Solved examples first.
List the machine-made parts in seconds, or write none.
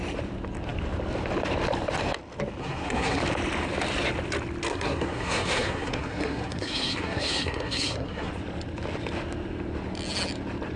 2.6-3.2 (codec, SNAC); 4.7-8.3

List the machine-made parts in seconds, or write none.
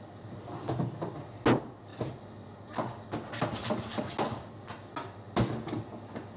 none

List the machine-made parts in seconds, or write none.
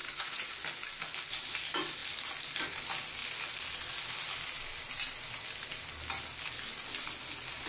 0.0-0.5 (vocoder, Vocos)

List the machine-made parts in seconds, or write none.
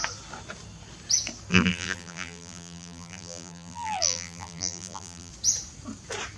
1.5-5.3 (vocoder, BigVGAN v2)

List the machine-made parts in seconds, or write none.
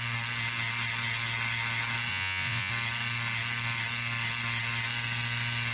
2.1-2.7 (vocoder, Vocos)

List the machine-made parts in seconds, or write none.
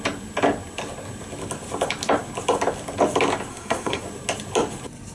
3.5-4.0 (codec, SNAC)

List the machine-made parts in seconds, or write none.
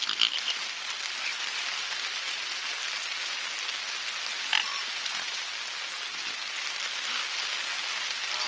none